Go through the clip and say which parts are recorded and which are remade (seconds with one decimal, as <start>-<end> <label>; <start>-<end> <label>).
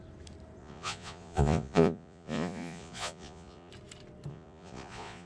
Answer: 0.0-0.6 recorded; 0.6-3.7 remade; 3.7-4.3 recorded; 4.3-5.3 remade